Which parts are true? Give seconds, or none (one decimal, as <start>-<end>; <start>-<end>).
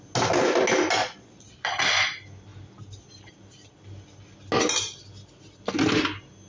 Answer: 0.0-1.0; 1.7-6.5